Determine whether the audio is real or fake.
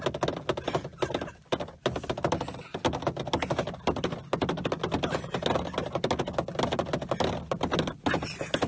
real